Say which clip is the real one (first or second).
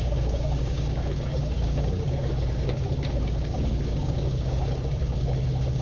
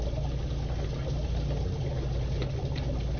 second